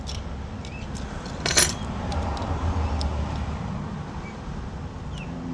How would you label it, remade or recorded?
recorded